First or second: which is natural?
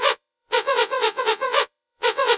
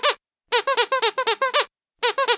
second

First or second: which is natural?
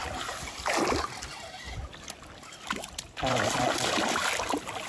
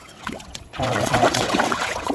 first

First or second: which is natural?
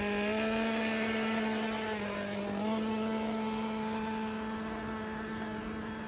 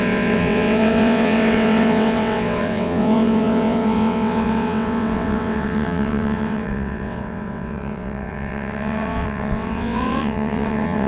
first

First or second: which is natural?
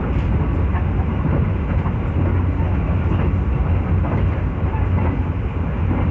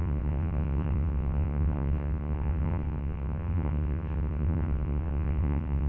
first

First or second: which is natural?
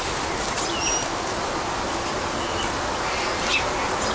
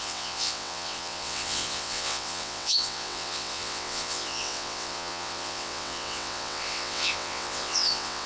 first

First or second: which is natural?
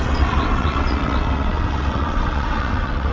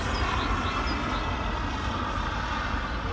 second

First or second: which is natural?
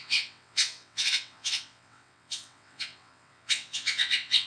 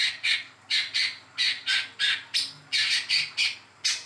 second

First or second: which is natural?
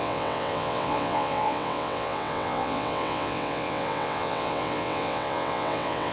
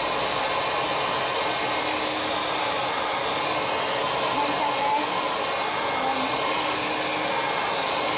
second